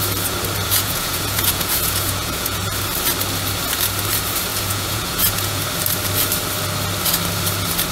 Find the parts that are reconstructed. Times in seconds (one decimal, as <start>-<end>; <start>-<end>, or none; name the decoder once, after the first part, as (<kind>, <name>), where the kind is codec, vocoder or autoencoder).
0.7-2.6 (vocoder, Vocos); 4.5-5.6